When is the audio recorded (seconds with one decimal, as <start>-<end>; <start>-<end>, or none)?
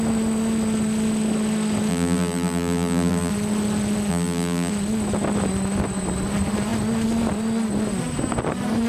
0.0-1.9; 3.3-4.1; 4.7-8.9